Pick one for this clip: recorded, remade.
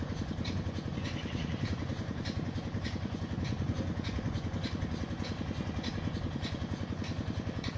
remade